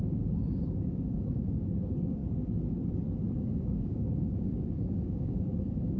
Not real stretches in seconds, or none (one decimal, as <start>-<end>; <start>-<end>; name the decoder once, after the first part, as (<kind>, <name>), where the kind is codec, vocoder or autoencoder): 0.0-2.2 (codec, DAC); 3.4-6.0